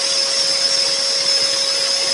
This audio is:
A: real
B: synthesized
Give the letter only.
A